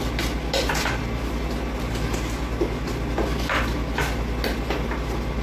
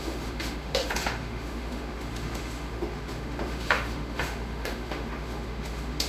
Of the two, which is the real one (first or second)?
first